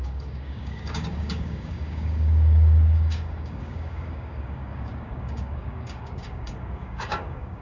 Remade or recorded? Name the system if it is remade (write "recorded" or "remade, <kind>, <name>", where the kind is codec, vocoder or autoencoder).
remade, codec, DAC